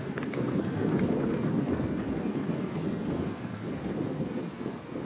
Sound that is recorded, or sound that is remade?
remade